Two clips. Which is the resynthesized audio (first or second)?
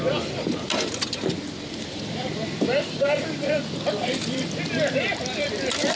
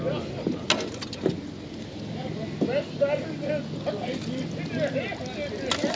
first